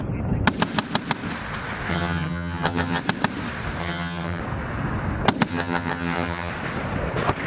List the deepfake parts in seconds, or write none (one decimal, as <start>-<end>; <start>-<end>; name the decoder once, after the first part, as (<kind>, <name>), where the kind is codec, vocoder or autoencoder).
1.9-3.0 (vocoder, HiFi-GAN); 3.8-4.4; 5.5-6.5